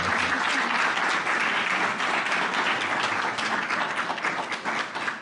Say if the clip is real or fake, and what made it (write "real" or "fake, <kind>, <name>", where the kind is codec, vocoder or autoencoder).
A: real